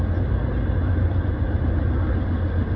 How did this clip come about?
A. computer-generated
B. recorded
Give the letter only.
B